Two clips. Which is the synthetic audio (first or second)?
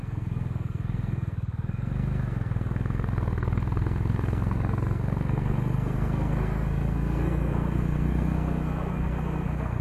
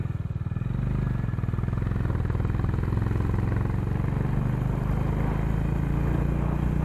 first